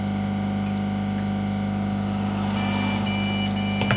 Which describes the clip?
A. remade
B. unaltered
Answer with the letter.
B